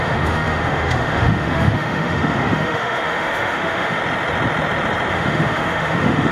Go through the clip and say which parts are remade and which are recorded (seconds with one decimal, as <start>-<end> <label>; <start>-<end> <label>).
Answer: 0.0-4.0 remade; 4.0-5.1 recorded; 5.1-6.3 remade

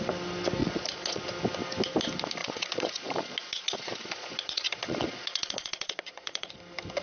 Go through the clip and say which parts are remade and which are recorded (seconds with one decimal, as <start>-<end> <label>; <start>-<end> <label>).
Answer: 0.0-0.6 recorded; 0.6-1.2 remade; 1.2-2.4 recorded; 2.4-6.6 remade; 6.6-7.0 recorded

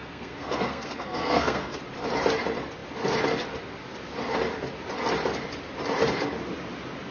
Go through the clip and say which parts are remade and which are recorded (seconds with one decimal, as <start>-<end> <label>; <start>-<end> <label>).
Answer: 0.0-1.8 remade; 1.8-7.1 recorded

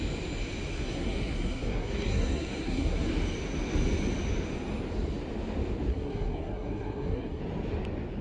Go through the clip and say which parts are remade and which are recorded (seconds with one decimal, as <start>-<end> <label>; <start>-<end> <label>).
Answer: 0.0-0.7 recorded; 0.7-3.1 remade; 3.1-5.9 recorded; 5.9-7.4 remade; 7.4-8.2 recorded

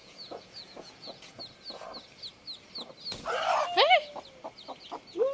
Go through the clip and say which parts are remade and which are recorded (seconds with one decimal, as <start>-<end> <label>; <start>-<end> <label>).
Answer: 0.0-1.4 remade; 1.4-5.3 recorded

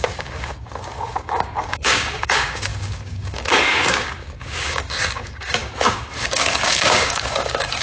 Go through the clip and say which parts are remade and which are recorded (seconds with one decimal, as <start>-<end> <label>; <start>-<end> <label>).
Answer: 0.0-7.8 remade